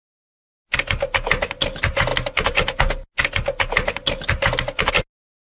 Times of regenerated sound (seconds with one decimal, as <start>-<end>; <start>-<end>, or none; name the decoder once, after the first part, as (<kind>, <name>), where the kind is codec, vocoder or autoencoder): none